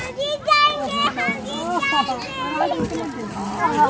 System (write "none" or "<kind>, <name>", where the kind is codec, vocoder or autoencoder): none